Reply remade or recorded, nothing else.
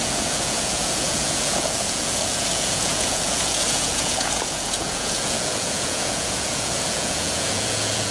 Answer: remade